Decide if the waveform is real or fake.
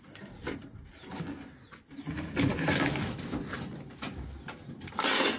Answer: real